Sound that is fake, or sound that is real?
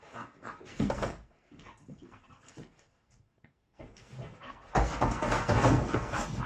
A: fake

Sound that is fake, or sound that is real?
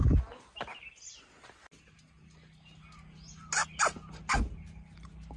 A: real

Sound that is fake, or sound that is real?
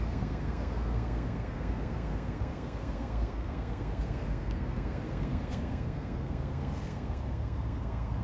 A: fake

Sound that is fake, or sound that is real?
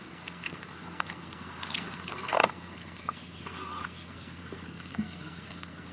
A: fake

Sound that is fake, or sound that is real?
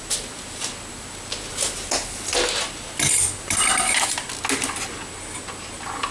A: real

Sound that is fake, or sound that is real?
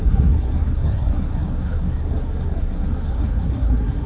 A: fake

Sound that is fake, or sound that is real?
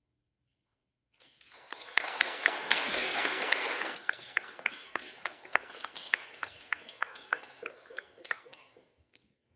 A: fake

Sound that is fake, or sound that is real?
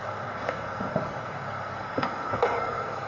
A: fake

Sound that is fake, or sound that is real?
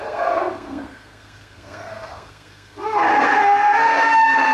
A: fake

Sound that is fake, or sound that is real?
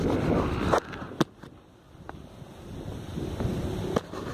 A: real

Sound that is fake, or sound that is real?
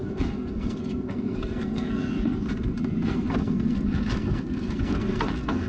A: fake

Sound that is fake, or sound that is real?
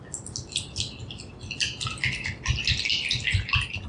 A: real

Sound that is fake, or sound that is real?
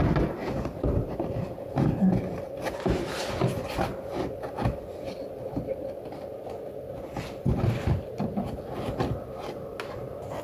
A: real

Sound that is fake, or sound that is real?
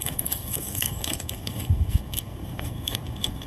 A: fake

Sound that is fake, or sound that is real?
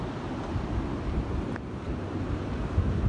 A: real